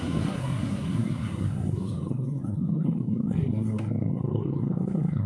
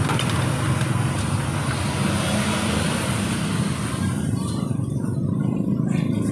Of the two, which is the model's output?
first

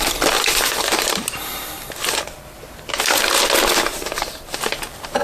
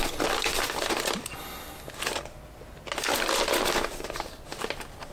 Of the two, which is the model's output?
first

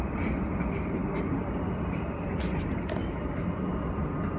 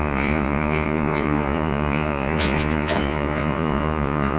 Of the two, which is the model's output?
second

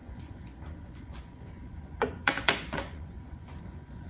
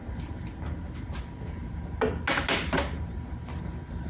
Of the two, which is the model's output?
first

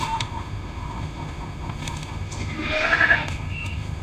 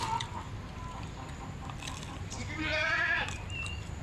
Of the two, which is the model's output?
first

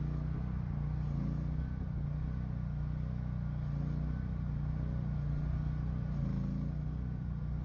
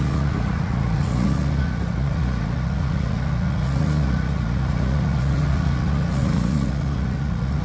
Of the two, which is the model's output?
second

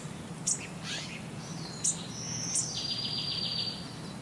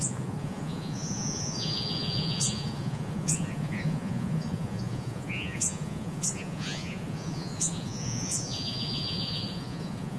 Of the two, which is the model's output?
second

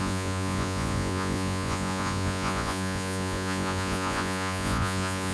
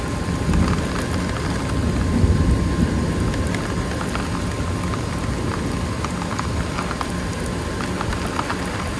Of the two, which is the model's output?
first